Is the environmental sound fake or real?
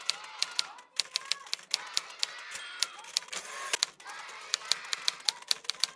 real